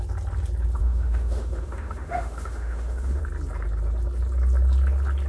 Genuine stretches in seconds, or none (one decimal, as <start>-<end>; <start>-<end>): 0.0-0.8; 3.2-5.3